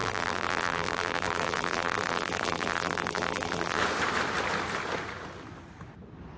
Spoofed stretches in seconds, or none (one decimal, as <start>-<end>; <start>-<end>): 0.0-3.8